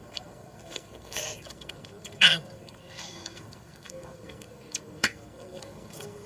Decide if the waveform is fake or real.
fake